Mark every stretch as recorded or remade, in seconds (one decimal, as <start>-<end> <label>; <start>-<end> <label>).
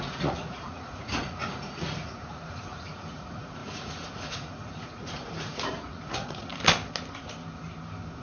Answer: 0.0-6.5 remade; 6.5-8.2 recorded